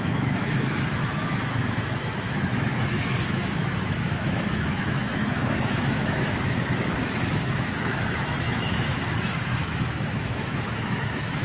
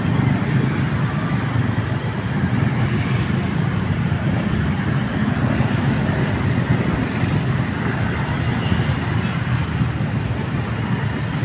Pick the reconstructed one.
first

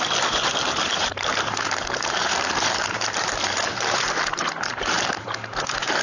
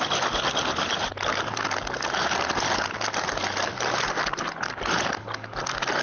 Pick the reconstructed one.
first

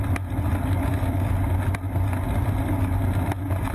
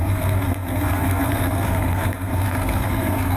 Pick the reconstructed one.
second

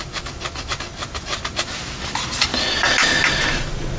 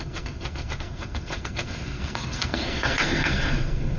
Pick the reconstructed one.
second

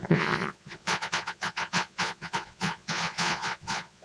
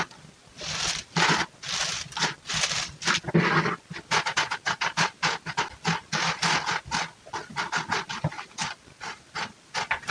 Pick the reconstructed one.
first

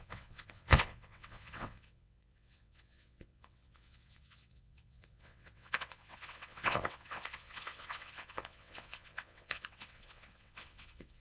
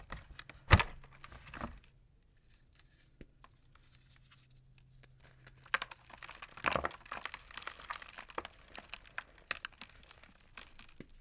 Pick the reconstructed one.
first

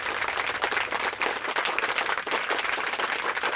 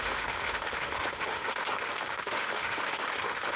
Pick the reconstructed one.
second